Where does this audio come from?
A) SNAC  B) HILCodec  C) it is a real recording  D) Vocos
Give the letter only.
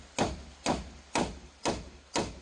C